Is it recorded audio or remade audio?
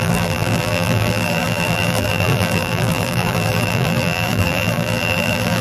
remade